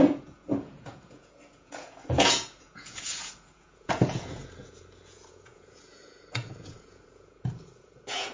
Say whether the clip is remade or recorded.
remade